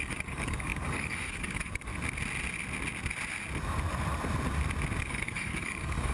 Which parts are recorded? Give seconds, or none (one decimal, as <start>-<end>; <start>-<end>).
1.9-5.0